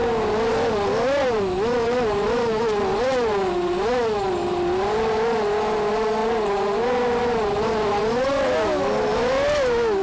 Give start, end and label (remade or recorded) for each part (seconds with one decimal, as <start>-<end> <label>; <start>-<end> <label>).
0.0-9.1 recorded; 9.1-10.0 remade